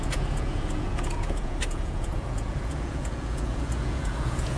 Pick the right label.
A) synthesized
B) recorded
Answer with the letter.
A